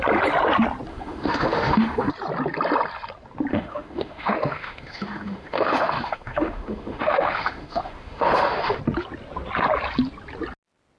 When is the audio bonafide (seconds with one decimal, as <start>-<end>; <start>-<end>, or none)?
0.0-0.9; 2.1-3.5; 8.8-11.0